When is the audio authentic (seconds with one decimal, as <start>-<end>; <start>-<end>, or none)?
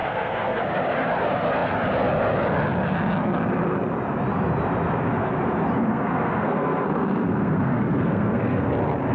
0.6-5.9; 8.7-9.1